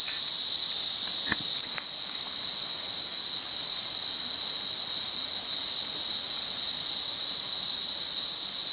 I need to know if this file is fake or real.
real